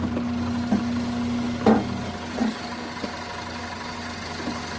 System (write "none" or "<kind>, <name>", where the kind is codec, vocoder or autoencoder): none